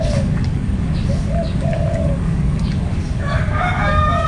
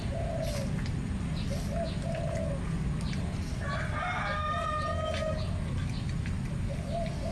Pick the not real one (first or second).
first